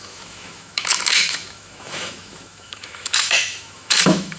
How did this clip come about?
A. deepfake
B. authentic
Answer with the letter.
A